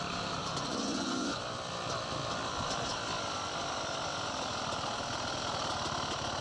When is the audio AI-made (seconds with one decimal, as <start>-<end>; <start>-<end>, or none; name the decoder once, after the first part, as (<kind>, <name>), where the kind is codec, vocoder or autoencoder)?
0.4-1.4 (vocoder, Vocos)